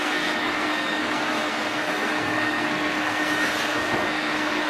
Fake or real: fake